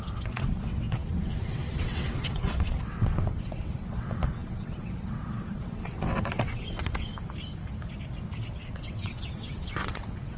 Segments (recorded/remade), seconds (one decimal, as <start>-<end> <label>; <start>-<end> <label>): 0.0-7.1 remade; 7.1-8.4 recorded; 8.4-10.4 remade